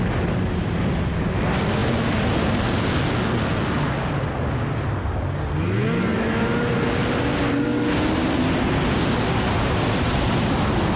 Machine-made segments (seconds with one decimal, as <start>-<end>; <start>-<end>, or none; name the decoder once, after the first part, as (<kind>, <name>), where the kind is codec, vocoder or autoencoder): none